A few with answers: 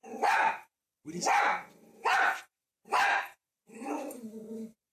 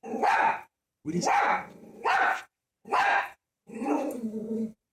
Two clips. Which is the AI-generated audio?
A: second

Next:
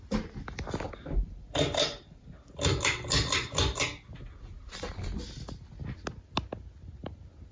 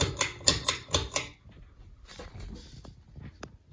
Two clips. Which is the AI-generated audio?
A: second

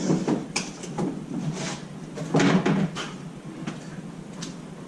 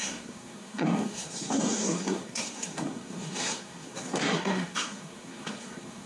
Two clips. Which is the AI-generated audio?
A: second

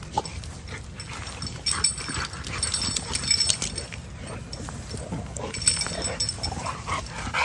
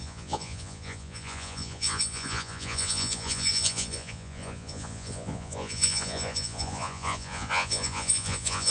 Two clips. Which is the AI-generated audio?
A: second